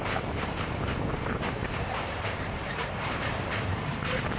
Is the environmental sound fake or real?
fake